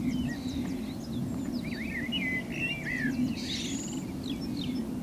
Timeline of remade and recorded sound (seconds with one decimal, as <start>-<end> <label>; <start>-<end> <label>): 0.0-5.0 recorded